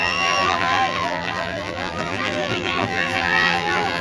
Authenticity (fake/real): fake